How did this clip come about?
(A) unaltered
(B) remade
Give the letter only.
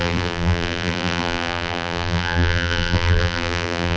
B